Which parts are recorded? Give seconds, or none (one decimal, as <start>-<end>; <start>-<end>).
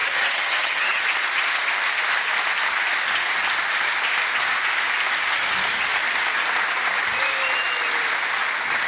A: 1.0-8.9